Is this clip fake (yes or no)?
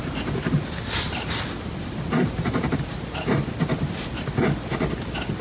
yes